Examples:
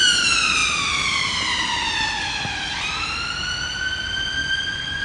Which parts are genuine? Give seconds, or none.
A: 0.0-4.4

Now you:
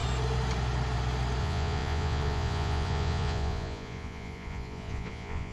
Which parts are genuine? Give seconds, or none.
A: 0.0-1.4

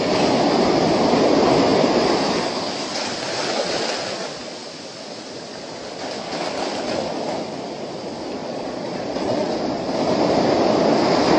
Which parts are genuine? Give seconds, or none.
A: 0.0-8.4; 9.5-11.4

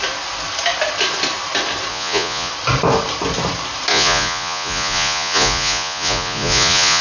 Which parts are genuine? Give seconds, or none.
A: 0.0-1.9; 2.5-3.9